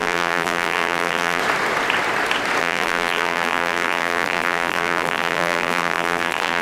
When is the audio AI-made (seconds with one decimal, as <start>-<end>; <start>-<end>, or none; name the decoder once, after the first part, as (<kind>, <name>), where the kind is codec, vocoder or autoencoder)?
0.0-1.4 (vocoder, BigVGAN v2); 2.6-6.6